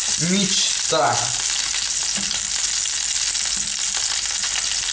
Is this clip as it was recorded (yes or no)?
yes